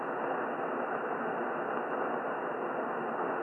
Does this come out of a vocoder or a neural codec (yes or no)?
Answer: no